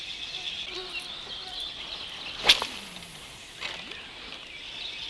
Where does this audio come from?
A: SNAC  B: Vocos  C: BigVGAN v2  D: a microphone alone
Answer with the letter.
D